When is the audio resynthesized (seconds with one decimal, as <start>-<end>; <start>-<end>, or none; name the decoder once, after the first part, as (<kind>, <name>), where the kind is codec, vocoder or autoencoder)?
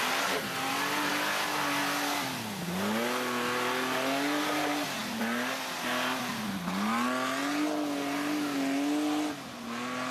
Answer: none